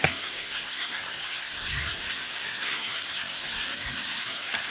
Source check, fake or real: fake